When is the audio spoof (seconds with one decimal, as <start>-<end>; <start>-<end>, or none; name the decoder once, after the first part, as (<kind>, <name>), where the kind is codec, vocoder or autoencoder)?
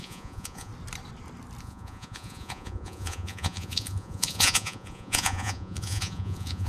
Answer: 0.0-0.7 (vocoder, Vocos); 1.6-6.7